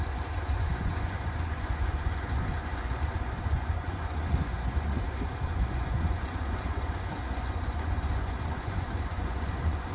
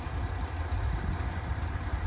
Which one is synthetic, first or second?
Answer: first